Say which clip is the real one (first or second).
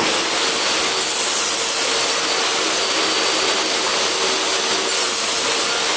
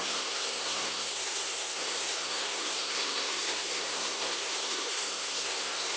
first